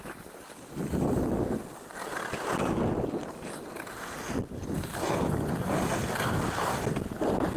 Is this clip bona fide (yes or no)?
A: yes